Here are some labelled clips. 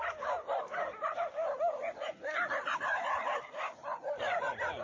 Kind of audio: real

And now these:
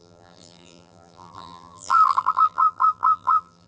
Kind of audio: fake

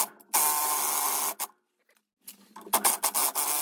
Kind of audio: real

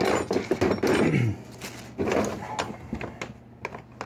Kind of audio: real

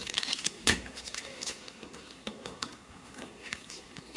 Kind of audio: fake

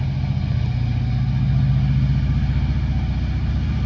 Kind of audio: real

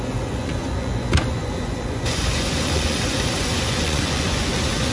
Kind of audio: fake